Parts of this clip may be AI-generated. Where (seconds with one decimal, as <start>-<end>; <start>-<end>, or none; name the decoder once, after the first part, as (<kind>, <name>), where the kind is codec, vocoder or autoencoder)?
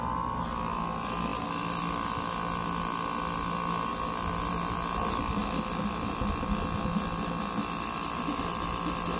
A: none